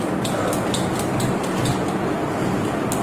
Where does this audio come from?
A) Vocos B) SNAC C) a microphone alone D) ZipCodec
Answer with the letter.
C